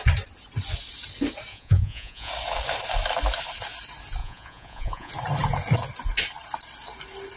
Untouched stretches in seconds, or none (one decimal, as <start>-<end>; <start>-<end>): 0.0-1.5; 2.3-4.2; 5.1-7.4